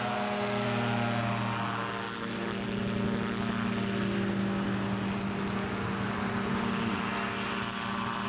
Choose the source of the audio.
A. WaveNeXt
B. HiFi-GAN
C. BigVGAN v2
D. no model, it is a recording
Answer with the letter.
D